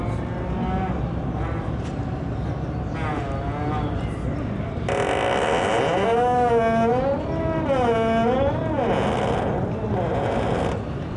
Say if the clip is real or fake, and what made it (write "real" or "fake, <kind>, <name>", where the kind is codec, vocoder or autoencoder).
real